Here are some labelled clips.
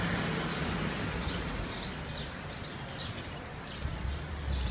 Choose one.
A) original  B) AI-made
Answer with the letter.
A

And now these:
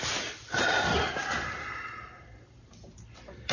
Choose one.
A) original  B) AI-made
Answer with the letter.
A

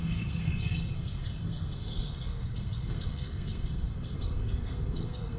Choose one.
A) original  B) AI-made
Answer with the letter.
B